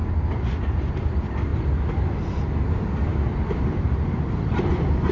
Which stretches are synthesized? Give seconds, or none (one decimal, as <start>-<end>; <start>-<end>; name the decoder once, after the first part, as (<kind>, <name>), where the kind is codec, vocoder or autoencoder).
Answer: none